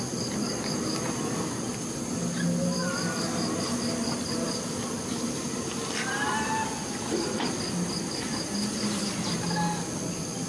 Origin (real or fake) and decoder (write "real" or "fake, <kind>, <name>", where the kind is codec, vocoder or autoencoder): real